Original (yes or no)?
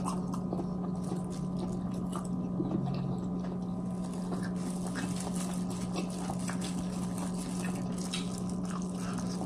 yes